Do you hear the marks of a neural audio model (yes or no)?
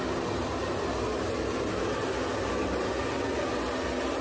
no